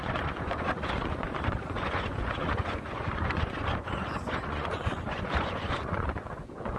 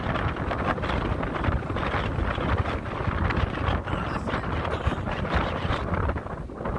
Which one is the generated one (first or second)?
first